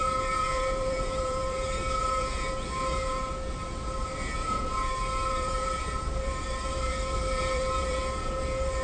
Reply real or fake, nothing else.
fake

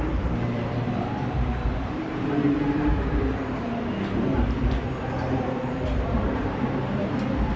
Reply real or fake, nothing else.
fake